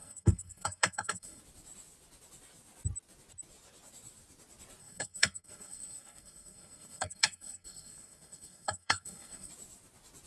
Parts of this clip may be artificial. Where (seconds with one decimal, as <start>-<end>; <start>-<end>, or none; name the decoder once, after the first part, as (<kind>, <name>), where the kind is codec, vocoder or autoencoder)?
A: 0.0-1.4 (codec, SNAC); 4.8-9.5